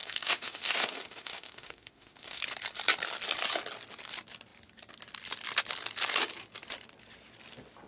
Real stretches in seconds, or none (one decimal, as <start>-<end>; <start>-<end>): 2.4-7.9